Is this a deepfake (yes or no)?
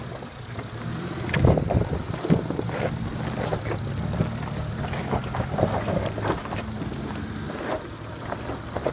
yes